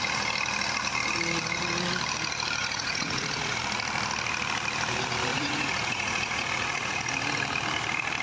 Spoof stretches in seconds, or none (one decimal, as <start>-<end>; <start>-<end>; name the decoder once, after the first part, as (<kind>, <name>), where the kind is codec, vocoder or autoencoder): 2.6-3.6 (vocoder, Vocos); 5.3-7.1